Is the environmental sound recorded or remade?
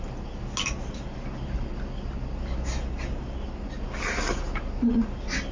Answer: recorded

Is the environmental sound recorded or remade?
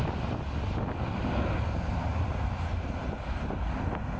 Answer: recorded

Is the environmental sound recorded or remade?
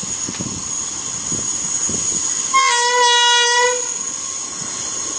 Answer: recorded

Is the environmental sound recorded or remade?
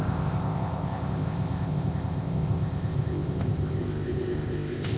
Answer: remade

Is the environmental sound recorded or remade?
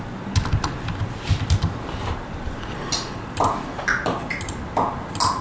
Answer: recorded